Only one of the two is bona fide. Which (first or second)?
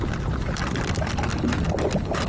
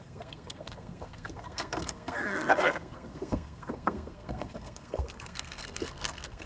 first